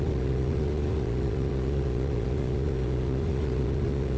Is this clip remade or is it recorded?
remade